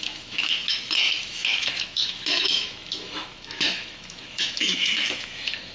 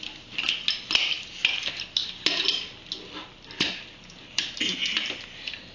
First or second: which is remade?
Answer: first